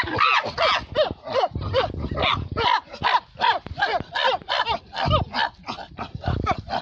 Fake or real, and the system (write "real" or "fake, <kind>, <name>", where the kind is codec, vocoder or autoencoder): real